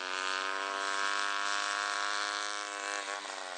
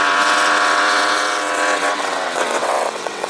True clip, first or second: first